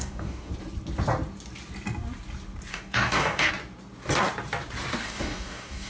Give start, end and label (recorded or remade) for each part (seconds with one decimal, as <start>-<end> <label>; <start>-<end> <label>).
0.0-0.5 remade; 0.5-2.7 recorded; 2.7-3.5 remade; 3.5-5.0 recorded; 5.0-5.9 remade